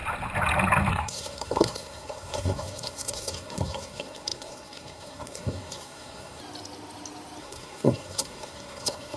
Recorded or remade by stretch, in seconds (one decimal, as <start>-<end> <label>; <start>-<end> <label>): 0.0-0.9 recorded; 0.9-6.4 remade; 6.4-7.4 recorded; 7.4-9.2 remade